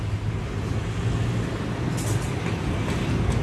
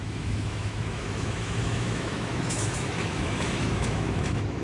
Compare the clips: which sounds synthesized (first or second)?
second